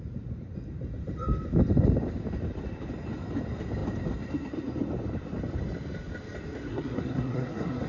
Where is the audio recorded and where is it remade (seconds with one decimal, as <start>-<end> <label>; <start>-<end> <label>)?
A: 0.0-6.7 recorded; 6.7-7.9 remade